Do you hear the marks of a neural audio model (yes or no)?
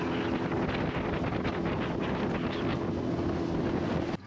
no